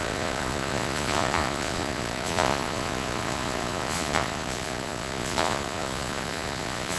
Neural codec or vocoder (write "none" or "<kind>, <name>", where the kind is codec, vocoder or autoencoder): vocoder, Vocos